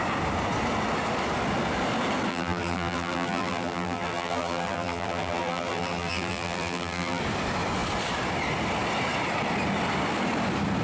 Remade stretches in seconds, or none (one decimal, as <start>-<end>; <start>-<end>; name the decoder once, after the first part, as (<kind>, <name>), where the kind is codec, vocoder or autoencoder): 2.3-7.2 (vocoder, BigVGAN v2)